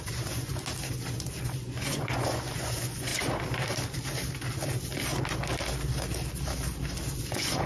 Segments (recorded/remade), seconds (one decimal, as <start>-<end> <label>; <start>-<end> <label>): 0.0-0.5 remade; 0.5-1.4 recorded; 1.4-3.1 remade; 3.1-7.2 recorded; 7.2-7.7 remade